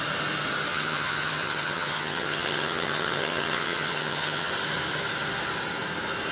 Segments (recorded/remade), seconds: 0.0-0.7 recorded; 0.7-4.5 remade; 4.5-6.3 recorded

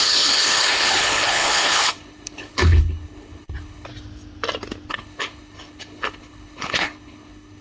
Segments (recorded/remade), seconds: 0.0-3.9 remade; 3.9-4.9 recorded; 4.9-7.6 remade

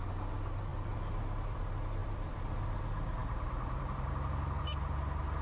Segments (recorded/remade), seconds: 0.0-0.7 recorded; 0.7-1.6 remade; 1.6-2.0 recorded; 2.0-2.8 remade; 2.8-3.2 recorded; 3.2-4.1 remade; 4.1-5.4 recorded